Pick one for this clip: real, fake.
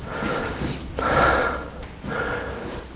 real